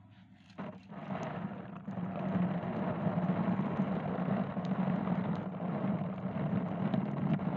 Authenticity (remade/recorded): recorded